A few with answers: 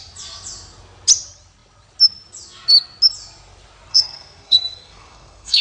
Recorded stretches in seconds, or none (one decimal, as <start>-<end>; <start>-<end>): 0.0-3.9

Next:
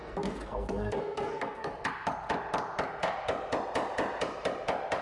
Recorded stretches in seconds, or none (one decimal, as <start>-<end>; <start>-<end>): 1.7-5.0

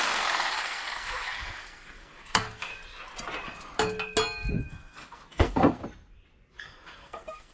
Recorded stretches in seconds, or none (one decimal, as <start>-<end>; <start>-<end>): 2.7-4.5; 5.8-6.6

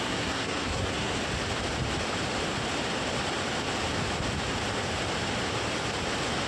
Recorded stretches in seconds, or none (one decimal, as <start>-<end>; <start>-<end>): 1.2-6.5

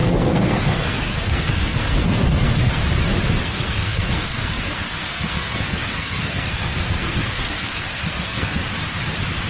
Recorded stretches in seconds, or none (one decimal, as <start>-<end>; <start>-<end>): 2.8-3.4; 8.6-9.5

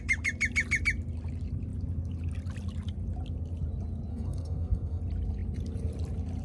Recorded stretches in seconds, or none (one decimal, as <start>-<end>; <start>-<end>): 0.0-4.1; 5.0-6.4